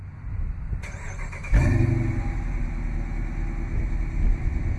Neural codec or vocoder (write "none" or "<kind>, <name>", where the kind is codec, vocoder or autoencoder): none